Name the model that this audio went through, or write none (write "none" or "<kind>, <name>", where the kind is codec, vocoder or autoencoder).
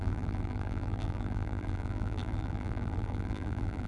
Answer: vocoder, BigVGAN v2